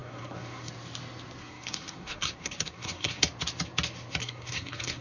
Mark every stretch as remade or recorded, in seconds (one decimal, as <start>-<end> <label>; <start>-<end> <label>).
0.0-0.7 remade; 0.7-1.4 recorded; 1.4-3.2 remade; 3.2-4.2 recorded; 4.2-5.0 remade